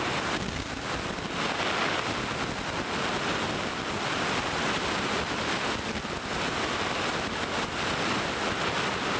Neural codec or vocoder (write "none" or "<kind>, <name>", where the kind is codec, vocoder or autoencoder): none